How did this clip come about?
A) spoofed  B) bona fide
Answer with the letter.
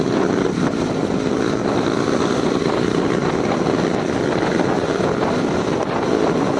B